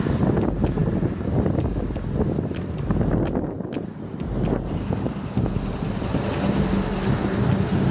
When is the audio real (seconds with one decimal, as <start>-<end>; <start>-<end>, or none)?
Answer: 0.0-7.9